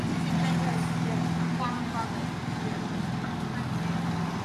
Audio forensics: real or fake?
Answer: real